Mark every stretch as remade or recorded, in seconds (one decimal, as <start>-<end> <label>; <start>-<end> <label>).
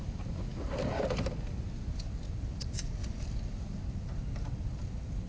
0.0-5.3 recorded